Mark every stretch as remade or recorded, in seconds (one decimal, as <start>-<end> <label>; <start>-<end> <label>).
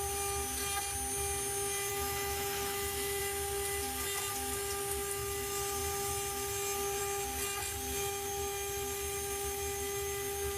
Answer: 0.0-1.9 recorded; 1.9-3.2 remade; 3.2-10.6 recorded